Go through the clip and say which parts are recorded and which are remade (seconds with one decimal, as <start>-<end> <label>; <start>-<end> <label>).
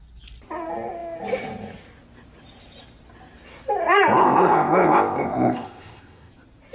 0.0-4.2 recorded; 4.2-6.3 remade; 6.3-6.7 recorded